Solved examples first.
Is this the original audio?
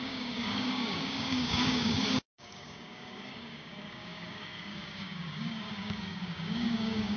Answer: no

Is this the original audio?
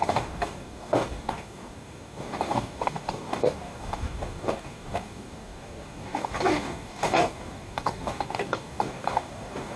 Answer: no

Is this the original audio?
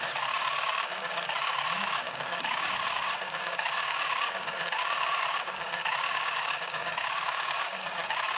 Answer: no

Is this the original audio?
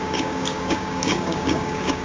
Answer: no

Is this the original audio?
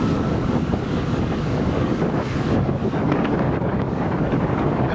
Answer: no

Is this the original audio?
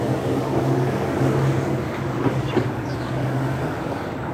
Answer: no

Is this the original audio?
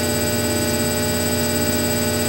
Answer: yes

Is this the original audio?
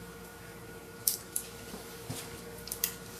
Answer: no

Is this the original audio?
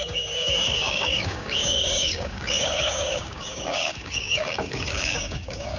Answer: no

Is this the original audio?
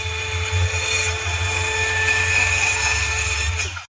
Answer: yes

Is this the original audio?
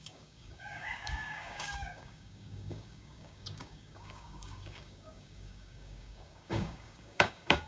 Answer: no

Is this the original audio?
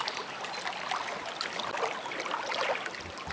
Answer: yes